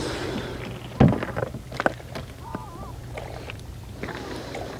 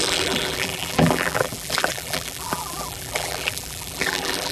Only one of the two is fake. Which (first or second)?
second